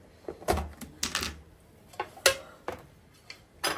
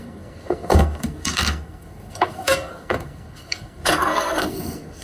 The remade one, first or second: second